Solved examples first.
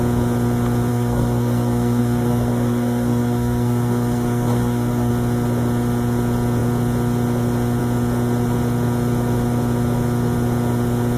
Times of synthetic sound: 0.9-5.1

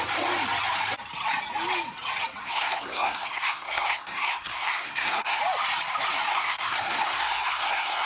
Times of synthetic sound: 2.4-5.4; 6.3-8.1

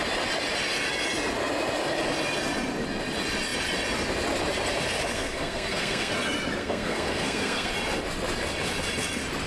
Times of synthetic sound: 5.1-6.1; 6.6-7.7